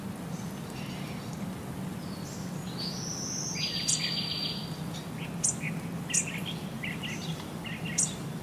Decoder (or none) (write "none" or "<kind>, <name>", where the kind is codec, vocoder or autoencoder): none